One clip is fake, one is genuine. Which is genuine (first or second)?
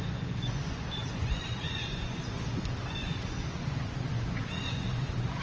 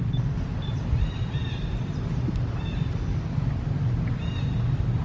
second